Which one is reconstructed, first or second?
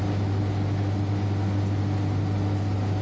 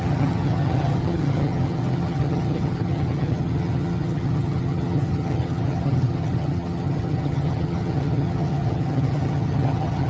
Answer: second